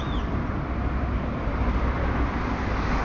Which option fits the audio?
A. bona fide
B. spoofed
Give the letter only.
A